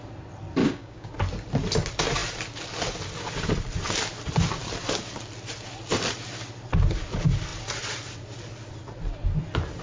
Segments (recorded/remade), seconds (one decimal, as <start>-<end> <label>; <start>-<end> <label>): 0.0-0.6 recorded; 0.6-1.1 remade; 1.1-9.8 recorded